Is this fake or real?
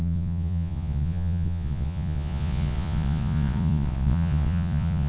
fake